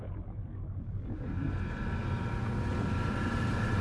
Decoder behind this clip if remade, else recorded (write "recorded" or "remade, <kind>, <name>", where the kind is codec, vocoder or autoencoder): recorded